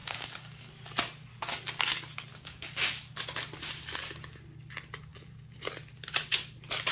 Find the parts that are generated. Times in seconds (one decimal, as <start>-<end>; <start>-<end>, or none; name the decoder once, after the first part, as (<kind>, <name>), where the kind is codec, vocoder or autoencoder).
0.0-0.7 (codec, DAC); 2.3-3.2